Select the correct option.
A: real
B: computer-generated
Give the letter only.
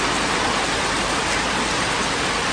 A